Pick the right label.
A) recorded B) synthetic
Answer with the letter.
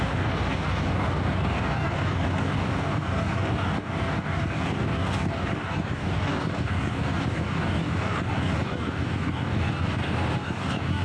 B